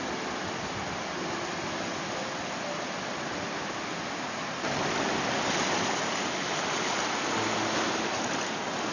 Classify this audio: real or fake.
real